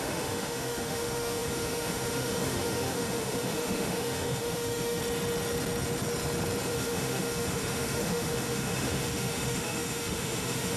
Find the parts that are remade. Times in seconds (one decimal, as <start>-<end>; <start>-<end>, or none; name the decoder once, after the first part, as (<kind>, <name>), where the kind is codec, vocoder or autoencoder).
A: 0.0-5.0 (autoencoder, DAC-VAE); 6.7-10.8